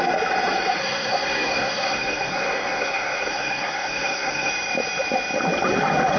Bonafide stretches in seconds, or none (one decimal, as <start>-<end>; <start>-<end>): 0.0-0.8; 4.5-6.2